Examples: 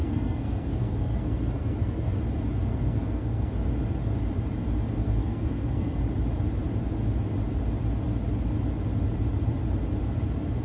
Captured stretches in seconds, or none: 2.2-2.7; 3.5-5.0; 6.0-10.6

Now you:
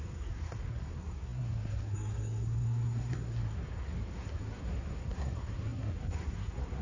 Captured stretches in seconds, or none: none

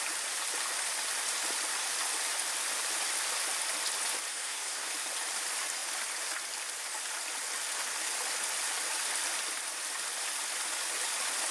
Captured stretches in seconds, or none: 0.0-4.3; 4.9-11.5

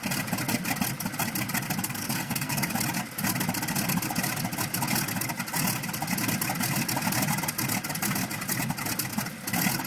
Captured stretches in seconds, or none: 0.0-2.0; 2.7-9.9

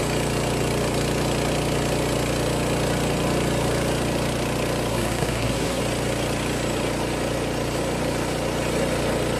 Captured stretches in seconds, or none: 0.0-4.9; 5.8-9.4

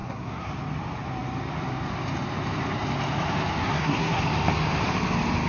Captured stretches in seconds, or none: 0.5-3.6; 4.2-5.5

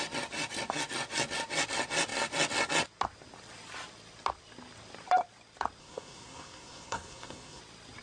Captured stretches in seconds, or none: 0.0-5.8; 7.6-8.0